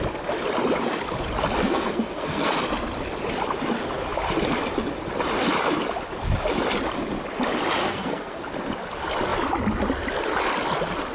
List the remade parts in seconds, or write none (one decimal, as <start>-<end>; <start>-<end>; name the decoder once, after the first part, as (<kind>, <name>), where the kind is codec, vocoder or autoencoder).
1.6-2.5 (codec, SNAC); 7.8-8.4